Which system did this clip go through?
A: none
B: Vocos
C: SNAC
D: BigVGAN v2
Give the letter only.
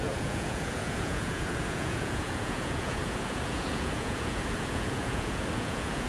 B